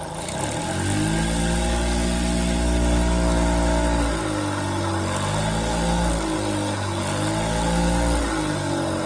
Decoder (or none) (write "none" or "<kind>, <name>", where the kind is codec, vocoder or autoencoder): none